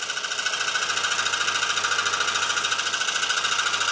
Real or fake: real